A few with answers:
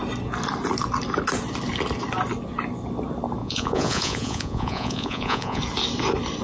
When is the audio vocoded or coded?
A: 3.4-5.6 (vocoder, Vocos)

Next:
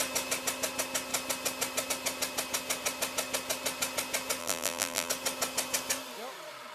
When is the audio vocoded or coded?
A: 4.4-5.1 (vocoder, BigVGAN v2)

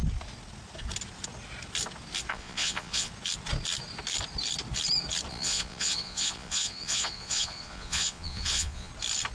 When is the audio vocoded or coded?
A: 2.3-3.1 (vocoder, Vocos); 5.3-8.9